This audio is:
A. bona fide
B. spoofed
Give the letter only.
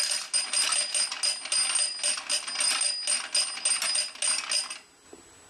A